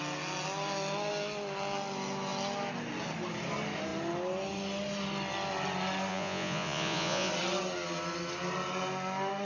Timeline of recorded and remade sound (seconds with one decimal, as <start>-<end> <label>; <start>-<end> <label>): 0.0-6.1 recorded; 6.1-7.3 remade; 7.3-9.4 recorded